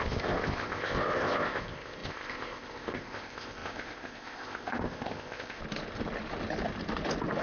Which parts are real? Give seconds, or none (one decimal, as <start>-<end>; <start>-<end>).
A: 5.6-7.4